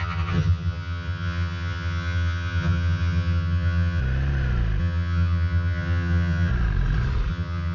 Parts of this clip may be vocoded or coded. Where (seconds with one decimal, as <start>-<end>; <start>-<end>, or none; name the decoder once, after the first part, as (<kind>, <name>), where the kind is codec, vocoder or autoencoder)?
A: 0.0-4.0 (vocoder, HiFi-GAN); 4.8-6.5; 7.3-7.7